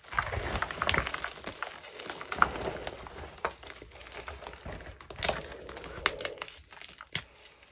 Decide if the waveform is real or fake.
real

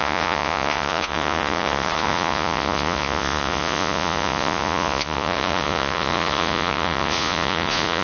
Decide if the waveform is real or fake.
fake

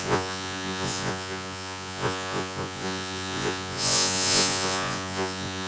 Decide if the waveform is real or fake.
fake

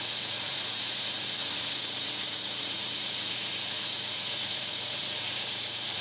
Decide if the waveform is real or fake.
fake